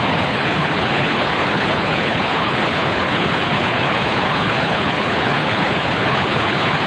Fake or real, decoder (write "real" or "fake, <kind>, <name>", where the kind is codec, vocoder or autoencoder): fake, codec, HILCodec